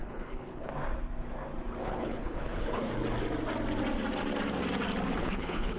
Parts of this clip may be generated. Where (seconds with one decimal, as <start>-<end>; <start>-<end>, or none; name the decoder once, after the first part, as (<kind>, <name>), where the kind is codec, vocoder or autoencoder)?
0.0-0.7 (codec, HILCodec); 1.8-2.9; 5.2-5.8